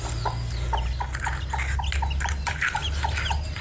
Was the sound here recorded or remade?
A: recorded